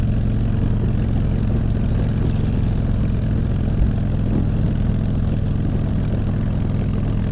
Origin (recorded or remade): recorded